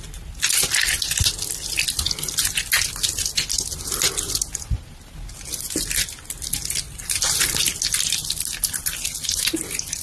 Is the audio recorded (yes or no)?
yes